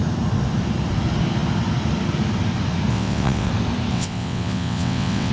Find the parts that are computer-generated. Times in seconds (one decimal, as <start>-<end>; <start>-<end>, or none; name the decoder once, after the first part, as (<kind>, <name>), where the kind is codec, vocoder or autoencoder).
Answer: 2.9-3.5 (vocoder, WaveNeXt); 3.9-5.3